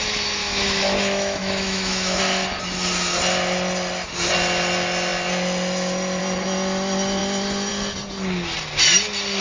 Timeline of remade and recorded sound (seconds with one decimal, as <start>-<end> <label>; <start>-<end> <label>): 0.0-0.4 recorded; 0.4-2.2 remade; 2.2-9.4 recorded